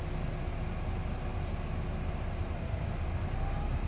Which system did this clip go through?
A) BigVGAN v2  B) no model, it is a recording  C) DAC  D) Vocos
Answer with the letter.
B